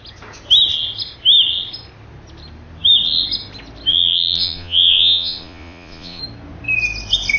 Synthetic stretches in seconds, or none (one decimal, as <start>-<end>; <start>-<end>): 3.9-6.2